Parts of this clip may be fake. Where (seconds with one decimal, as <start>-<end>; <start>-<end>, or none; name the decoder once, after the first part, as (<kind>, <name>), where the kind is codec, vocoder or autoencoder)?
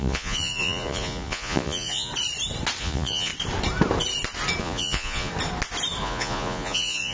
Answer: 0.0-2.1 (vocoder, Vocos); 2.8-3.3; 4.6-5.3; 6.0-7.1